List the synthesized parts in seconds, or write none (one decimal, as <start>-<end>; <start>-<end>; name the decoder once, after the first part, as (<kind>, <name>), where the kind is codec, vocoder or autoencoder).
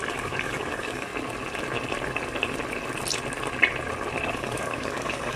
0.0-1.1 (codec, DAC); 4.3-5.4